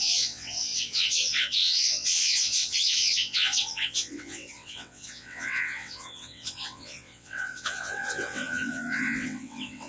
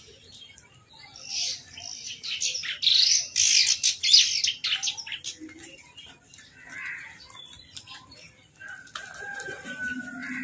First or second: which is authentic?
second